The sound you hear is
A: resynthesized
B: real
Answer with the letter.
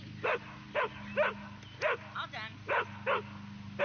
B